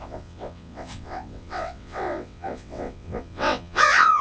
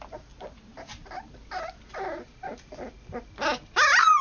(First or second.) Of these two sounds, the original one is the second